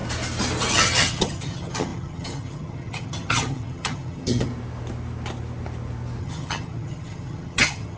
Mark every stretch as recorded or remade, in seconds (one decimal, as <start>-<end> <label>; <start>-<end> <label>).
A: 0.0-0.7 recorded; 0.7-4.5 remade; 4.5-6.2 recorded; 6.2-8.0 remade

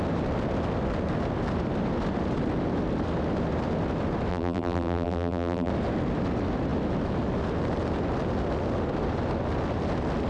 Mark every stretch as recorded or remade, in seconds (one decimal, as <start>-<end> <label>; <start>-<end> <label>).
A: 0.0-4.3 recorded; 4.3-5.7 remade; 5.7-10.3 recorded

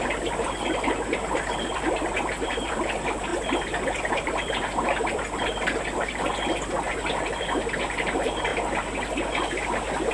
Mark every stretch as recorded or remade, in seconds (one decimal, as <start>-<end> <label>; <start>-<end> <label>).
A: 0.0-3.3 remade; 3.3-4.1 recorded; 4.1-8.5 remade; 8.5-10.1 recorded